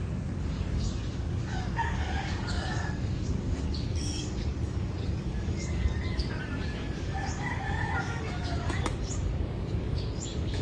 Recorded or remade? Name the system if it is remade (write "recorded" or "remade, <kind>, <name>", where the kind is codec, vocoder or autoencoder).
remade, codec, DAC